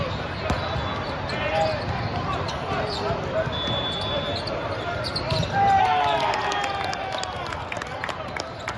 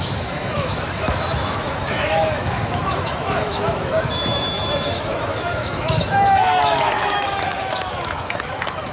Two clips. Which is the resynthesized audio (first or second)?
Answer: second